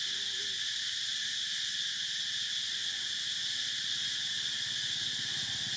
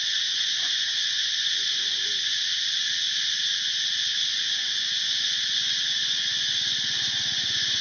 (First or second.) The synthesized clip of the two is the second